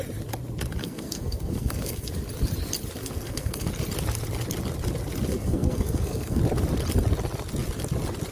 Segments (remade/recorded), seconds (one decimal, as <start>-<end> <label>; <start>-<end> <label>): 0.0-0.8 recorded; 0.8-2.1 remade; 2.1-3.0 recorded; 3.0-3.7 remade; 3.7-5.3 recorded; 5.3-6.4 remade; 6.4-8.3 recorded